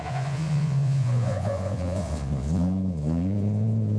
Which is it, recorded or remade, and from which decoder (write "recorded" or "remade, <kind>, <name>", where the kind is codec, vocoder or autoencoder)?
remade, vocoder, Vocos